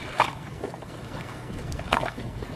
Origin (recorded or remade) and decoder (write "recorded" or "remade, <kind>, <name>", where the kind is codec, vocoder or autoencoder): remade, codec, SNAC